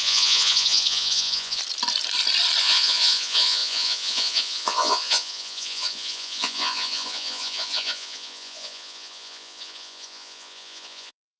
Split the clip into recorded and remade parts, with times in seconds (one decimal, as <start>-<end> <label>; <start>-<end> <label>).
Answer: 0.0-1.6 remade; 1.6-2.6 recorded; 2.6-11.4 remade